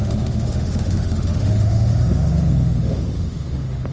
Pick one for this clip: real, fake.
fake